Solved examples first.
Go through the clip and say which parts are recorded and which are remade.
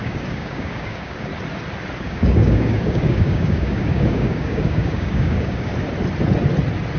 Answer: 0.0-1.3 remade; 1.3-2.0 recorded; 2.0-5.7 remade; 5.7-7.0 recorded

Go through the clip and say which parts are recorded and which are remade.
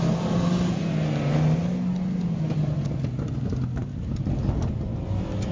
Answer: 0.0-3.7 recorded; 3.7-4.2 remade; 4.2-5.5 recorded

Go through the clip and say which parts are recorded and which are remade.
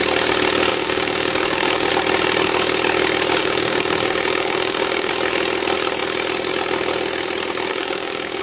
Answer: 0.0-0.7 recorded; 0.7-1.9 remade; 1.9-3.4 recorded; 3.4-5.1 remade; 5.1-7.7 recorded; 7.7-8.4 remade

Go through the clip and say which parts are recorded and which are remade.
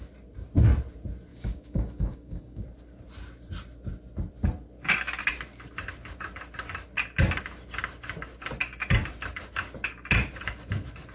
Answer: 0.0-1.3 recorded; 1.3-2.6 remade; 2.6-11.1 recorded